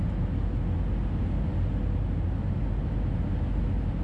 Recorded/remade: recorded